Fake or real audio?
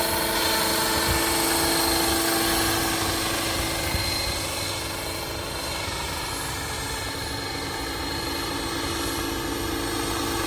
real